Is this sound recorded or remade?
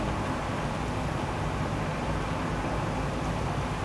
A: recorded